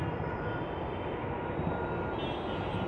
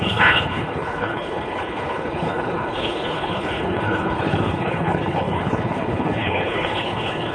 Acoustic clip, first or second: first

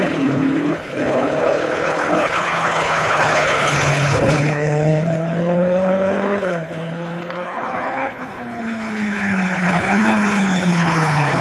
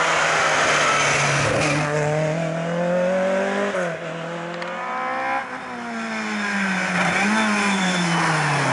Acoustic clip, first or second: second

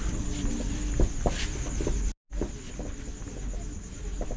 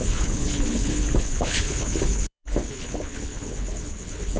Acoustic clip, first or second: first